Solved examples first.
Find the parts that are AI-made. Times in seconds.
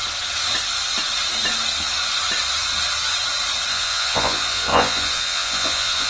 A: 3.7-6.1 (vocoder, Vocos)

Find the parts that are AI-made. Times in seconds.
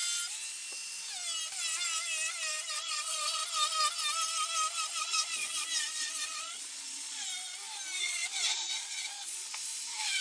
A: 2.7-3.4 (vocoder, Vocos); 5.0-7.3; 8.0-10.2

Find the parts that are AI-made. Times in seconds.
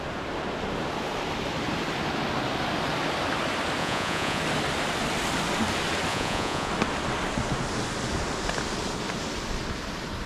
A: 3.8-4.4 (vocoder, Vocos); 6.1-6.7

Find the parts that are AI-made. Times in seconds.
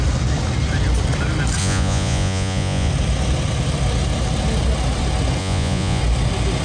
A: 1.6-2.9 (vocoder, Vocos); 5.4-6.0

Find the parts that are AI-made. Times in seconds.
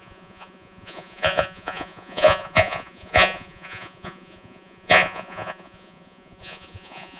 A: 0.0-7.2 (vocoder, Vocos)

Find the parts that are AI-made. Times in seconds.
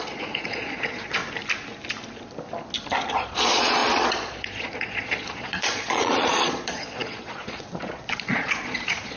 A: 0.0-1.2 (vocoder, Vocos); 3.1-9.2